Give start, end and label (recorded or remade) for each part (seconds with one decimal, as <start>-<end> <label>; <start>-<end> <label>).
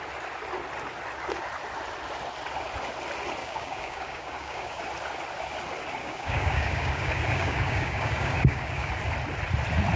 0.0-3.4 recorded; 3.4-4.8 remade; 4.8-6.0 recorded; 6.0-8.9 remade; 8.9-10.0 recorded